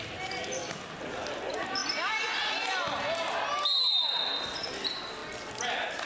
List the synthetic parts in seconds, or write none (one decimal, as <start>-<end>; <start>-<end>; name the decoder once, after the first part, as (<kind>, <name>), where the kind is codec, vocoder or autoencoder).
none